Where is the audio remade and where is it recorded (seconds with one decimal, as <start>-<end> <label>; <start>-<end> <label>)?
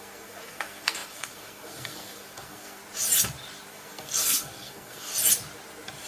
0.0-2.8 remade; 2.8-3.7 recorded; 3.7-5.1 remade; 5.1-6.1 recorded